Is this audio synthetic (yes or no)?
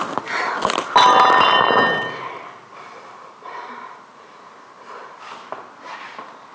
no